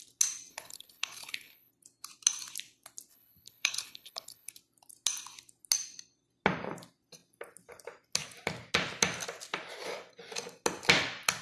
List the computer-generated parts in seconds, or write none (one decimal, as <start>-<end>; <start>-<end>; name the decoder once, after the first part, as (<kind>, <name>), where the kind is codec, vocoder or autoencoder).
0.5-1.7 (codec, HILCodec); 3.1-4.5